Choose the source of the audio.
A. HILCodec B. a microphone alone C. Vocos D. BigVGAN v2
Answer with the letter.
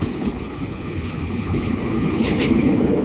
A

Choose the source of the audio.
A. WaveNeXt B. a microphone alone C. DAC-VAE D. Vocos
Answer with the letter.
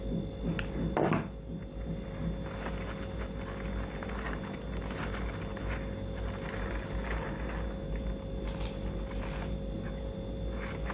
B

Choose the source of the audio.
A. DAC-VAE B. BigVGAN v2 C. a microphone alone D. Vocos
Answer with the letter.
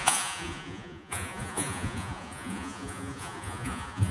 D